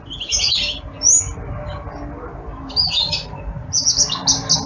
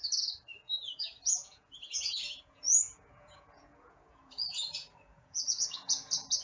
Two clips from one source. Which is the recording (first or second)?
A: first